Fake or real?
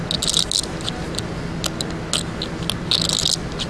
real